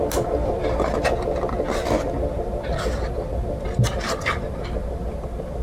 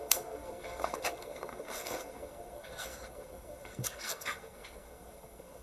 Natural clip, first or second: first